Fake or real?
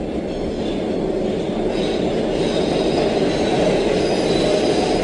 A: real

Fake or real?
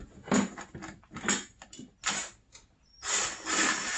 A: real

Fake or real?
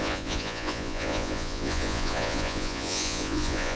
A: fake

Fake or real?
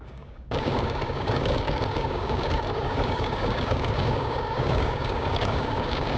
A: fake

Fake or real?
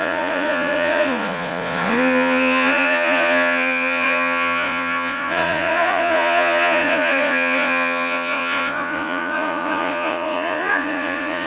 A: fake